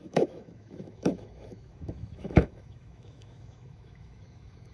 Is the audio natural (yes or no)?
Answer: no